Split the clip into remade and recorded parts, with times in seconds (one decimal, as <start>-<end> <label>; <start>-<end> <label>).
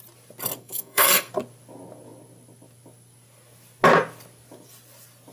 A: 0.0-0.6 recorded; 0.6-1.3 remade; 1.3-5.3 recorded